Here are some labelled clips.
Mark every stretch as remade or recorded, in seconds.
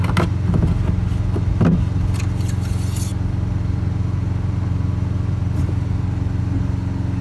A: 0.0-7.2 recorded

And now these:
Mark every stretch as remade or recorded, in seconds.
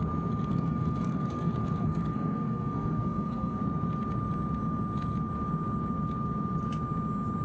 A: 0.0-0.5 recorded; 0.5-3.6 remade; 3.6-7.4 recorded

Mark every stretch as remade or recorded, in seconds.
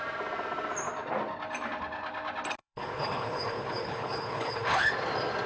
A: 0.0-2.6 recorded; 2.6-4.9 remade; 4.9-5.5 recorded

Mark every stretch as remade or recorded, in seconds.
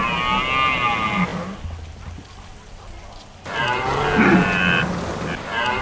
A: 0.0-5.8 recorded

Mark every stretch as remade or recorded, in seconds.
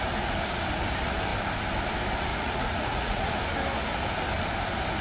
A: 0.0-2.3 recorded; 2.3-3.3 remade; 3.3-5.0 recorded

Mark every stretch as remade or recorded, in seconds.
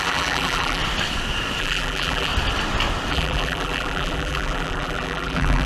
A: 0.0-0.8 remade; 0.8-1.6 recorded; 1.6-2.3 remade; 2.3-3.1 recorded; 3.1-5.7 remade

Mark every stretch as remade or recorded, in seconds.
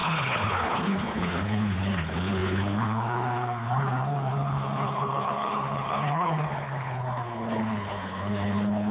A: 0.0-8.9 remade